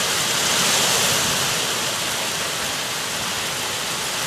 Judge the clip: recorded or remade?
recorded